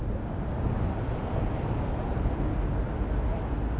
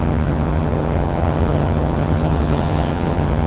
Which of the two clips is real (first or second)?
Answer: first